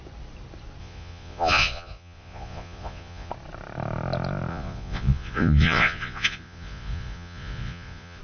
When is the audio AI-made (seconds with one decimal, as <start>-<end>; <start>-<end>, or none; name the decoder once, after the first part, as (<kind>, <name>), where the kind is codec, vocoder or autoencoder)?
0.8-3.3 (vocoder, Vocos); 4.5-8.2